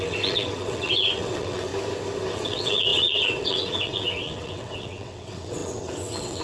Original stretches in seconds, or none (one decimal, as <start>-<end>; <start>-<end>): 1.7-2.3